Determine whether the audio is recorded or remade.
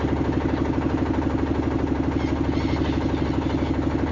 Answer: recorded